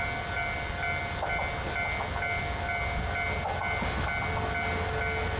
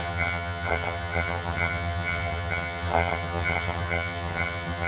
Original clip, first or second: first